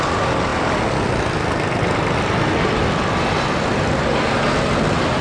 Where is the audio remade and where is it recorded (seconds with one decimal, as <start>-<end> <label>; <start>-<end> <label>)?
0.0-5.2 recorded